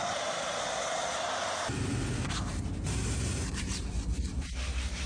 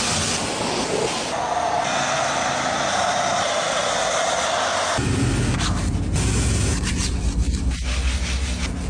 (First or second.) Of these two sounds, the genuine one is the second